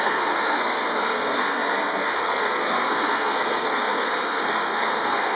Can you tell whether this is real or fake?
fake